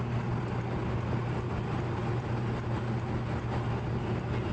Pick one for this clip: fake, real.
real